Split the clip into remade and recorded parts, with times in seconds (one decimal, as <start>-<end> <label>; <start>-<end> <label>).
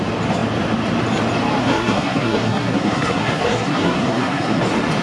0.0-1.6 recorded; 1.6-4.6 remade; 4.6-5.0 recorded